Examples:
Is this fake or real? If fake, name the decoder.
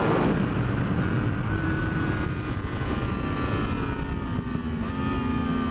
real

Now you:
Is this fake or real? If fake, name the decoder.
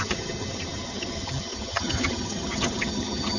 fake, vocoder, HiFi-GAN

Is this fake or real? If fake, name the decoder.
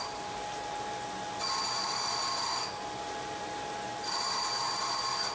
real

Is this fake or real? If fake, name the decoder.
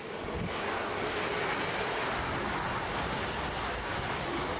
real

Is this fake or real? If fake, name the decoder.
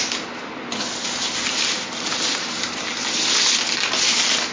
real